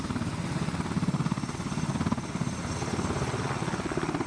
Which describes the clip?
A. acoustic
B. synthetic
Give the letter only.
A